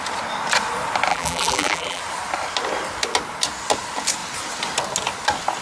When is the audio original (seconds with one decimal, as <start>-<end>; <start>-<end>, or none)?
0.0-1.1; 2.0-5.6